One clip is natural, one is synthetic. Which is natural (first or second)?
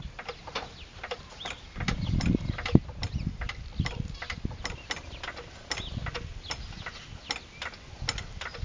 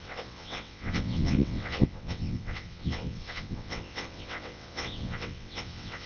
first